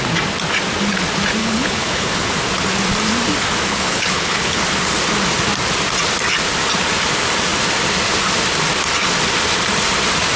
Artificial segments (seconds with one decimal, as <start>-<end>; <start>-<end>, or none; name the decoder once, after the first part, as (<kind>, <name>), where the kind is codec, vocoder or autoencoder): 1.4-2.3 (codec, HILCodec); 3.7-4.6